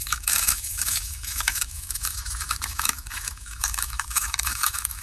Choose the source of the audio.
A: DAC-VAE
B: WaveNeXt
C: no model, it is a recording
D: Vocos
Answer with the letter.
A